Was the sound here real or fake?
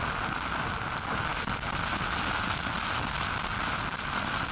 real